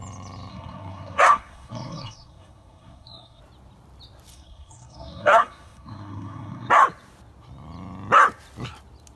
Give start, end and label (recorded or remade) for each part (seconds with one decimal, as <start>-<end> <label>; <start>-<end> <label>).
0.0-0.5 recorded; 0.5-3.4 remade; 3.4-4.3 recorded; 4.3-6.7 remade; 6.7-9.2 recorded